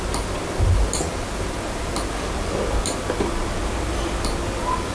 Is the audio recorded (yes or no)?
yes